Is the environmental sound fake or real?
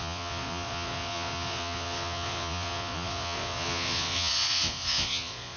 fake